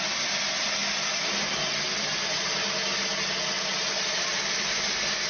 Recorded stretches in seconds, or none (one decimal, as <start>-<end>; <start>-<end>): 0.0-5.3